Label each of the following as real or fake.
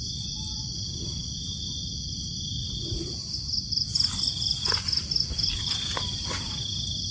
real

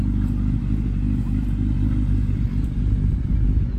real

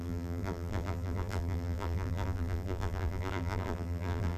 fake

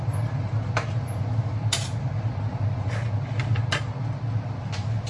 real